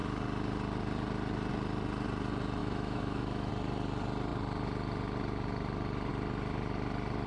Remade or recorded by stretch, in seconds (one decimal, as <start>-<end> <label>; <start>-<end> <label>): 0.0-2.6 recorded; 2.6-3.5 remade; 3.5-7.3 recorded